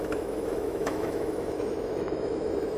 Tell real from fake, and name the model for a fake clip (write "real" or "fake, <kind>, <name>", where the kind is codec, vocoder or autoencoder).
fake, autoencoder, DAC-VAE